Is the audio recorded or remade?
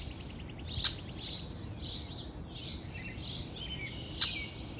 recorded